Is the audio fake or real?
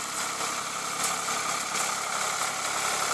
real